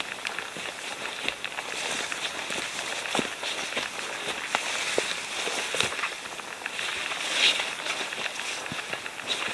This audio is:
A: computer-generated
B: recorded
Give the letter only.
B